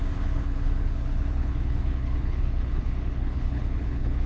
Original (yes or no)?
no